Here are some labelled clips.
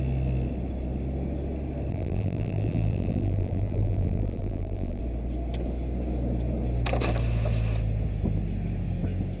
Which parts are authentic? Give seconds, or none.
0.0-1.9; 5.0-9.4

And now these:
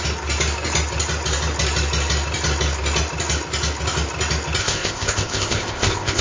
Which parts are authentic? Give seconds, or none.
0.0-4.6

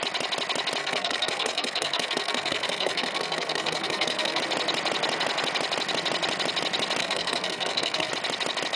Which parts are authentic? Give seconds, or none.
0.0-0.8; 4.4-7.0; 8.1-8.8

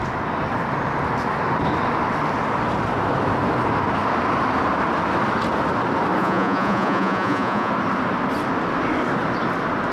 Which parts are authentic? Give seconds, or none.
0.0-6.2; 7.7-9.9

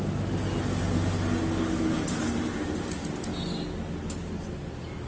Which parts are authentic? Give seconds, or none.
0.0-5.1